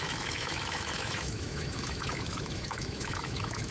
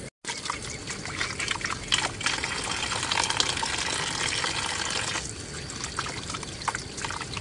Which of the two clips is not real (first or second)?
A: first